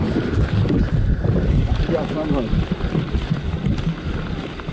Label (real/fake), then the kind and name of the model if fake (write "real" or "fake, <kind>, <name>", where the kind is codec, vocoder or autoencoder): real